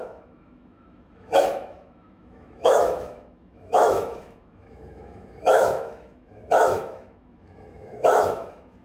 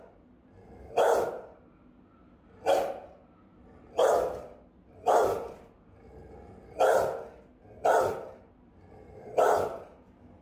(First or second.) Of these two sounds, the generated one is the first